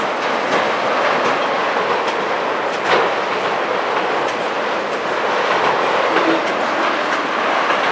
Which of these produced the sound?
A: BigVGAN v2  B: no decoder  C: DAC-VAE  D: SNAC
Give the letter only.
B